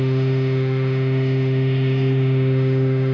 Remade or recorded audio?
remade